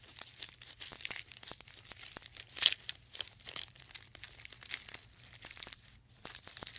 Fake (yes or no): yes